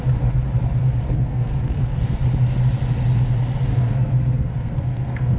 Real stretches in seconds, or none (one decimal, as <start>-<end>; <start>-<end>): 0.0-0.8; 1.8-3.7